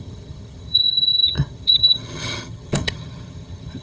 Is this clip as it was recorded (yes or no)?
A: no